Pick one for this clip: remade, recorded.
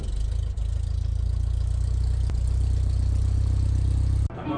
recorded